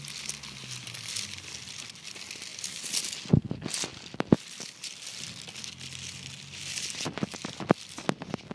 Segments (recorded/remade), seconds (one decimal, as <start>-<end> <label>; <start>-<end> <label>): 0.0-8.5 recorded